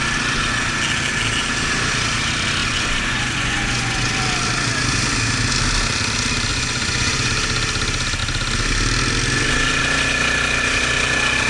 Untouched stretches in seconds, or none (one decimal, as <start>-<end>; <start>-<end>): 0.0-2.6; 4.1-6.5; 7.3-11.5